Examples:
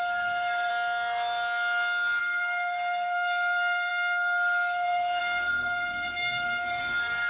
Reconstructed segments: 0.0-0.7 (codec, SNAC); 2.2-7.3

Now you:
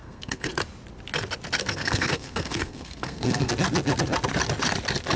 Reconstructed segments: 0.0-0.5 (codec, SNAC); 1.6-3.5

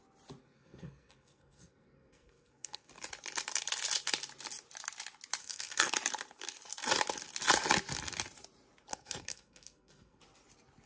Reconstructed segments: 0.4-2.9 (codec, SNAC); 5.4-5.9; 8.9-10.2

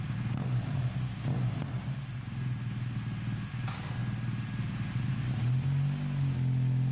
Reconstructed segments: none

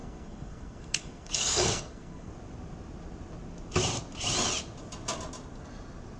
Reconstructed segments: 0.0-2.3 (codec, SNAC)

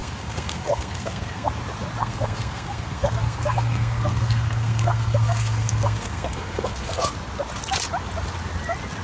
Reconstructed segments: 0.0-1.5 (codec, SNAC); 2.0-7.1